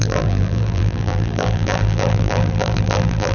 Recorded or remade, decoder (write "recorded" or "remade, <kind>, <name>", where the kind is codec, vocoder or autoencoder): remade, vocoder, BigVGAN v2